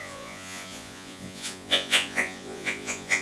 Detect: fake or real fake